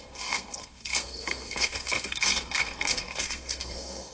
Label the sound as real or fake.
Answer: fake